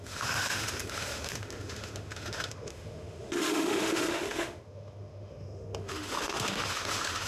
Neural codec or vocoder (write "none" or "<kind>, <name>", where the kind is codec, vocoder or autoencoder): autoencoder, DAC-VAE